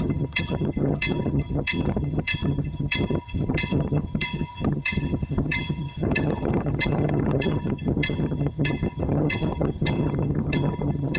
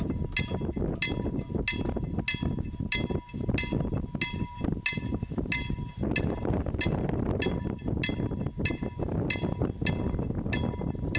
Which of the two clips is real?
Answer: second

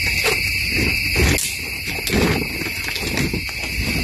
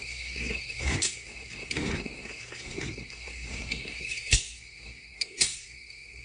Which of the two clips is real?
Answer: first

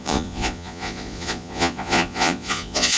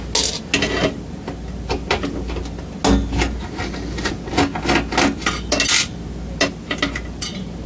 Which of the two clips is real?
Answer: second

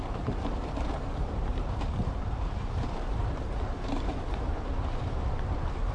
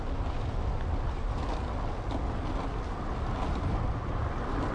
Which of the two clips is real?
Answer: second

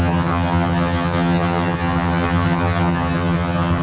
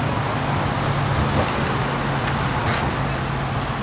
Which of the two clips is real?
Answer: second